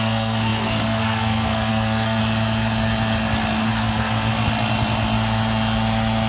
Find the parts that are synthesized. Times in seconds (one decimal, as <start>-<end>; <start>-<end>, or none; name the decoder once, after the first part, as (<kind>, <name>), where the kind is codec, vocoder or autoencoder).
0.0-2.2 (codec, SNAC); 3.7-4.3